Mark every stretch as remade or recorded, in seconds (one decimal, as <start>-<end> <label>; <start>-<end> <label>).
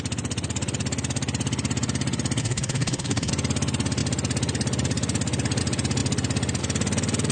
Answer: 0.0-2.4 recorded; 2.4-3.3 remade; 3.3-7.3 recorded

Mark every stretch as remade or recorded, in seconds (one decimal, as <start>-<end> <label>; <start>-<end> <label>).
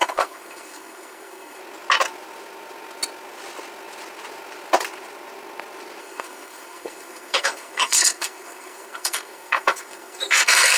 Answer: 0.0-1.6 remade; 1.6-6.0 recorded; 6.0-10.8 remade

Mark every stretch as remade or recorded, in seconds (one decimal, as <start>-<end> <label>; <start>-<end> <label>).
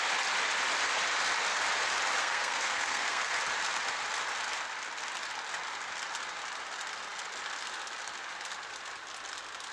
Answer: 0.0-2.2 recorded; 2.2-3.3 remade; 3.3-9.7 recorded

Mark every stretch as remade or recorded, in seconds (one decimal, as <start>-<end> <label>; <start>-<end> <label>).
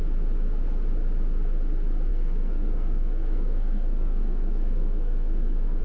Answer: 0.0-2.1 recorded; 2.1-5.8 remade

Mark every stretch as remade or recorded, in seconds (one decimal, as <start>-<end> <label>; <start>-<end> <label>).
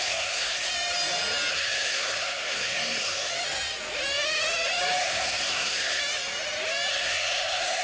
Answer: 0.0-0.7 remade; 0.7-1.5 recorded; 1.5-3.3 remade; 3.3-5.0 recorded; 5.0-6.0 remade; 6.0-6.9 recorded; 6.9-7.8 remade